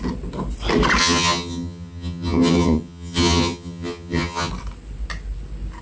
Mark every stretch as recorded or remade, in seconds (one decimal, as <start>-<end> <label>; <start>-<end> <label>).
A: 0.0-1.0 recorded; 1.0-4.5 remade; 4.5-5.8 recorded